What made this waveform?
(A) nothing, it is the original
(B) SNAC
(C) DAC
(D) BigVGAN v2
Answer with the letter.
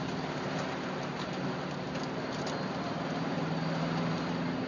A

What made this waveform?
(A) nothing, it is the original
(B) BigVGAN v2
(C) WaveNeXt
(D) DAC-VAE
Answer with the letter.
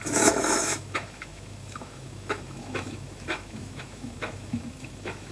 D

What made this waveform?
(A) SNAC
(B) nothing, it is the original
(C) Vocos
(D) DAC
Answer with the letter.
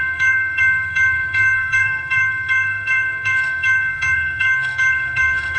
A